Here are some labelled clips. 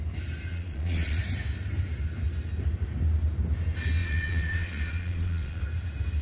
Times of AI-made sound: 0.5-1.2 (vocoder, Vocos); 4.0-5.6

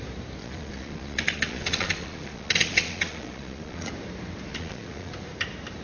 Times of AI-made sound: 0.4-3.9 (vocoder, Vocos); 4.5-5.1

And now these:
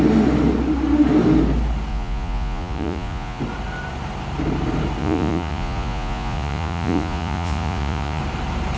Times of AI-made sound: 1.9-3.4 (vocoder, Vocos); 5.0-8.2

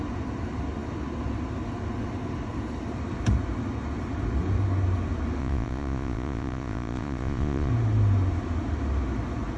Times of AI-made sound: 5.4-7.7 (vocoder, Vocos)

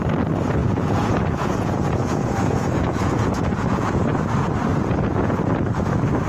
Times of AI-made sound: 0.6-4.0 (vocoder, Vocos); 4.7-5.5